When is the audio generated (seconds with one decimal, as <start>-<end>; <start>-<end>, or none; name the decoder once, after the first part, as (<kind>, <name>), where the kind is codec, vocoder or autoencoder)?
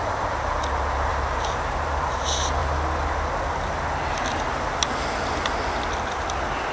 1.1-2.2 (vocoder, BigVGAN v2)